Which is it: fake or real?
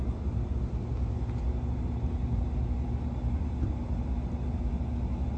real